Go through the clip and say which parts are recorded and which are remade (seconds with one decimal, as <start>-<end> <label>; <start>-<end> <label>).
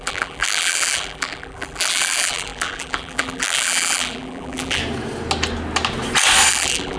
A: 0.0-4.8 remade; 4.8-6.5 recorded; 6.5-7.0 remade